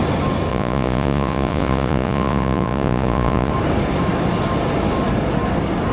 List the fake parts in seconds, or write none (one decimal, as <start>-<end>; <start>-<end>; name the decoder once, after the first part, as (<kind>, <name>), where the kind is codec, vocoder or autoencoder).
0.5-3.5 (vocoder, Vocos)